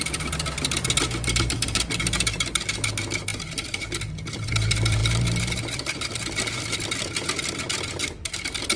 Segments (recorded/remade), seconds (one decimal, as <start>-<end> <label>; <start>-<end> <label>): 0.0-8.8 recorded